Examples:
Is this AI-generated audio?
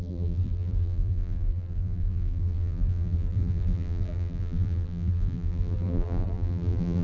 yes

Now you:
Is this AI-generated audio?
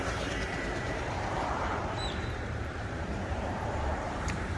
yes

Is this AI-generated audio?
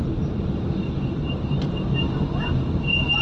yes